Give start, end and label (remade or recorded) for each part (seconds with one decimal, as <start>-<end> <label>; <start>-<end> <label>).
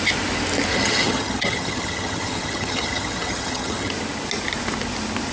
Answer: 0.0-0.7 recorded; 0.7-3.9 remade; 3.9-5.3 recorded